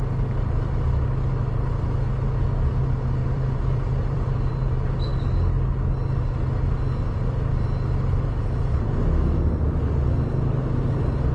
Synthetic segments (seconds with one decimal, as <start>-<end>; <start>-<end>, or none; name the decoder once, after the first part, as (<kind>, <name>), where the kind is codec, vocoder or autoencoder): 3.2-4.5 (vocoder, BigVGAN v2); 5.1-5.7